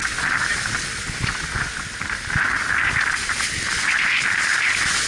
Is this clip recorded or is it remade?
recorded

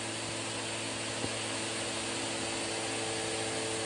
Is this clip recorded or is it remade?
recorded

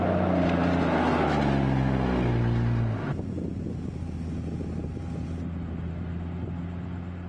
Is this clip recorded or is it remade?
recorded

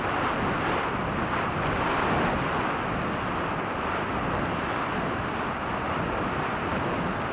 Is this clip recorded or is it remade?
recorded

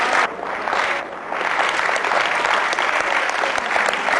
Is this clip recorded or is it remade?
recorded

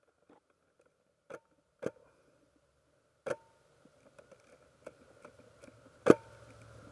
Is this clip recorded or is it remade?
recorded